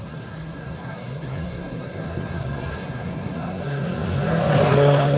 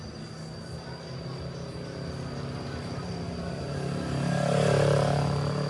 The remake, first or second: first